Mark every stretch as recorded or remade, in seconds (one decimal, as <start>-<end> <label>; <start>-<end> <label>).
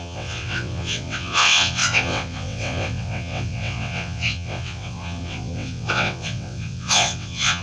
0.0-7.6 remade